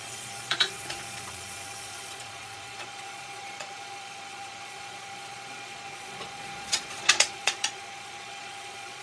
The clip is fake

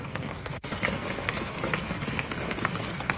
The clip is fake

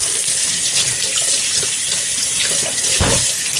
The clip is real